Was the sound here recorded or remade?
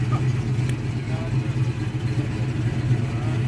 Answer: recorded